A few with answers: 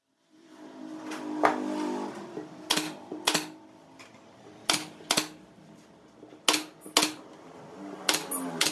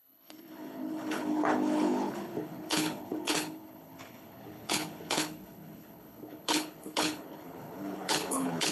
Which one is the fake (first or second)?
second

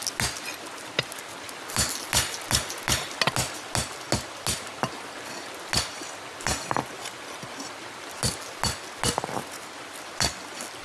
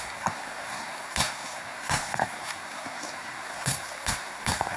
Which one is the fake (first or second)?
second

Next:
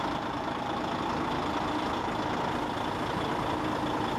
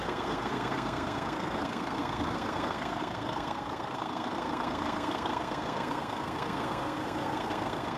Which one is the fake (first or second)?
second